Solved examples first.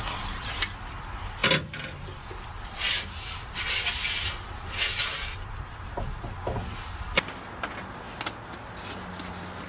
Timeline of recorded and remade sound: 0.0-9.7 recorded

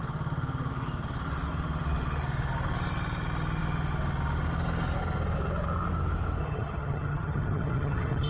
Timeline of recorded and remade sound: 0.0-6.4 recorded; 6.4-8.3 remade

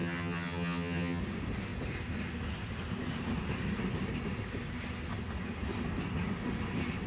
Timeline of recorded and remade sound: 0.0-1.2 remade; 1.2-7.1 recorded